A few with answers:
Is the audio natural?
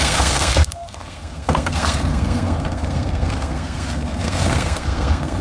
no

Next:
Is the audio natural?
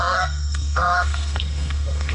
no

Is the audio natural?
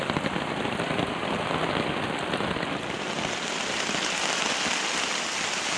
yes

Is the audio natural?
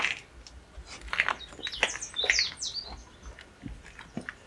yes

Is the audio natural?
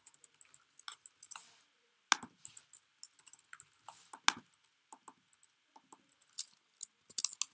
yes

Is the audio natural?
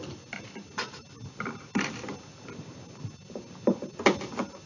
yes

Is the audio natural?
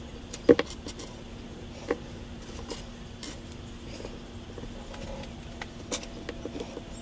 yes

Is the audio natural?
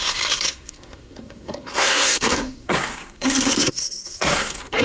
no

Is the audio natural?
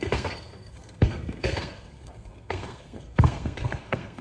no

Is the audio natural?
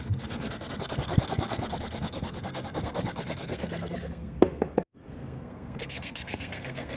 no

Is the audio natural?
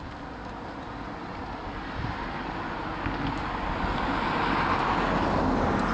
yes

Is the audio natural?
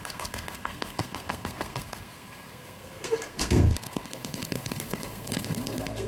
no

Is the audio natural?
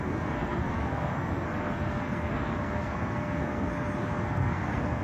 no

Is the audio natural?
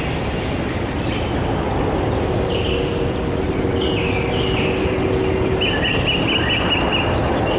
yes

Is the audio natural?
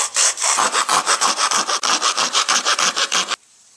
yes